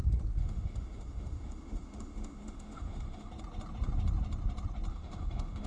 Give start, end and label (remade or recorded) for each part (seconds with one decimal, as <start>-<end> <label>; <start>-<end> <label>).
0.0-0.4 recorded; 0.4-3.3 remade; 3.3-4.9 recorded; 4.9-5.7 remade